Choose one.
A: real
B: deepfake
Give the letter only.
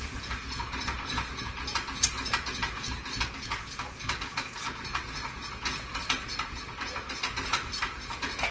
B